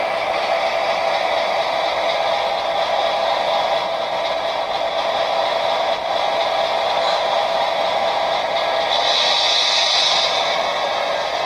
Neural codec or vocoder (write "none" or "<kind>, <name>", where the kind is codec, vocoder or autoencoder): none